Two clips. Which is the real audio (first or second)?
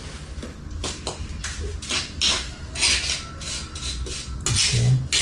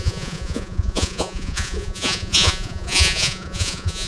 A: first